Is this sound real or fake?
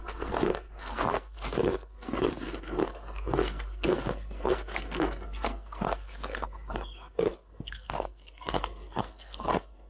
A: fake